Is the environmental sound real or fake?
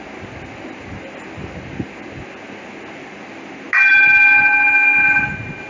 real